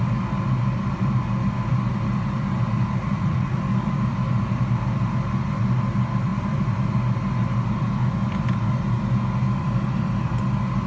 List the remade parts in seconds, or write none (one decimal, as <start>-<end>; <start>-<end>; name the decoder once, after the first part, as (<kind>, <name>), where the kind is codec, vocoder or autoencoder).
3.0-3.6 (vocoder, Vocos)